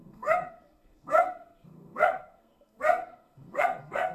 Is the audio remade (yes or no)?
yes